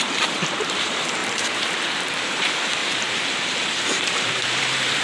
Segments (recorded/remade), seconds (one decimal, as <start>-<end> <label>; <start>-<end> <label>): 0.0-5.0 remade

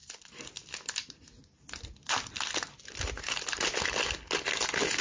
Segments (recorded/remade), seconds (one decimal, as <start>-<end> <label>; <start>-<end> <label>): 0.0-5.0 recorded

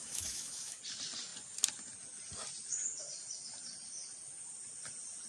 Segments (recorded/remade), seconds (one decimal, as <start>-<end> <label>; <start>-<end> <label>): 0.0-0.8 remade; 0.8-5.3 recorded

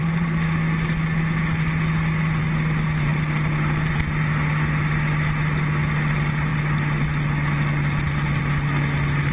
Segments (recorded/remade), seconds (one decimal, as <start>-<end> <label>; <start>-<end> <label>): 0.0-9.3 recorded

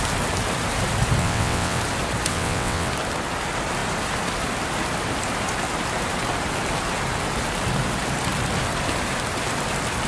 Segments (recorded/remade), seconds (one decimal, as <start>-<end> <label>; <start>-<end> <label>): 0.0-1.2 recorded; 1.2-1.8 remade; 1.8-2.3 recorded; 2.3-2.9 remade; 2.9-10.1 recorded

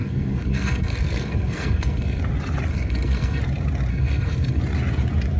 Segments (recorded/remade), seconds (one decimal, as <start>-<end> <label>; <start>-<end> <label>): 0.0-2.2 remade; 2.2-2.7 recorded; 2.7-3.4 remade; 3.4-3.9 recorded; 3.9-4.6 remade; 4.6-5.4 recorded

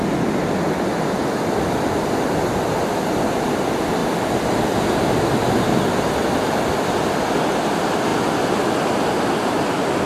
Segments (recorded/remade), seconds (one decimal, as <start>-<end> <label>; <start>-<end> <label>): 0.0-8.1 recorded; 8.1-9.0 remade; 9.0-10.1 recorded

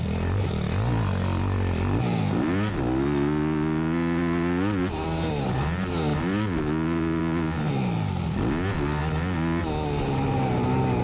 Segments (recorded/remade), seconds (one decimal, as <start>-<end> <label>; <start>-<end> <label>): 0.0-11.0 recorded